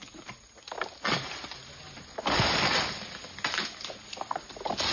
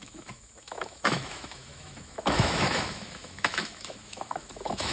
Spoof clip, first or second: second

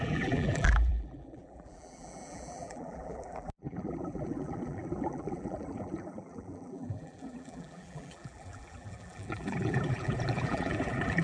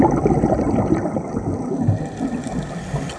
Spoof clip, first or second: first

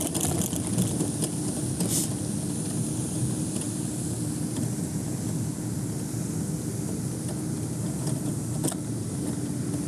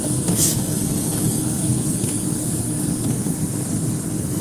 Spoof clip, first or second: second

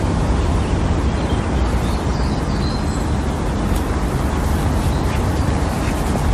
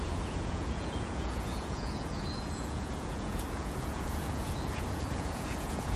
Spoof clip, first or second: second